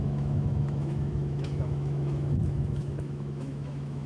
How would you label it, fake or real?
fake